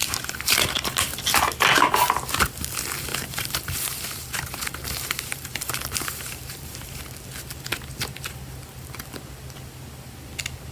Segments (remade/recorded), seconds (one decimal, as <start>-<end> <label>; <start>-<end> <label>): 0.0-0.6 remade; 0.6-3.1 recorded; 3.1-7.0 remade; 7.0-10.7 recorded